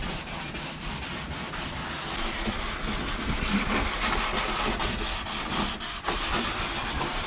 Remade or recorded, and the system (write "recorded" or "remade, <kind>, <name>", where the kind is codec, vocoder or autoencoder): recorded